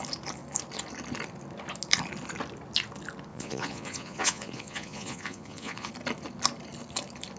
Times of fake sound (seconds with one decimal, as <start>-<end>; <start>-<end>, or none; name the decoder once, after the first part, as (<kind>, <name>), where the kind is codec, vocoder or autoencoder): 3.3-5.9 (vocoder, Vocos)